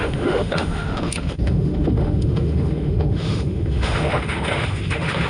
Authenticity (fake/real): fake